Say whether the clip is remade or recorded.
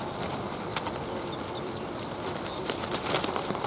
remade